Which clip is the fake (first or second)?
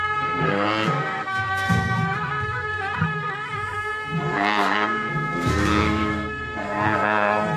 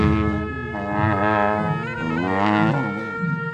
first